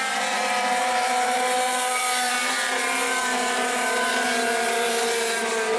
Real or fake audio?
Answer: fake